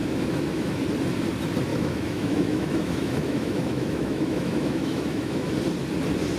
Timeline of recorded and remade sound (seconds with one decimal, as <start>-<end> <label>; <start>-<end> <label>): 0.0-0.8 remade; 0.8-1.7 recorded; 1.7-5.5 remade; 5.5-6.4 recorded